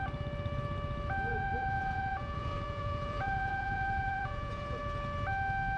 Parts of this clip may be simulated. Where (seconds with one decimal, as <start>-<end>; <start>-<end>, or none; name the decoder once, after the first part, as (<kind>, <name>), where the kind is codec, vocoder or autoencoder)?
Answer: 1.3-4.8 (vocoder, Vocos)